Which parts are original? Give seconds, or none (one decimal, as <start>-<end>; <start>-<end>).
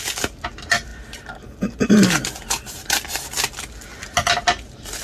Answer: 0.0-5.0